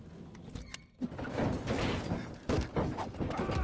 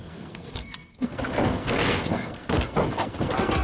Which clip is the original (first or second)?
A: first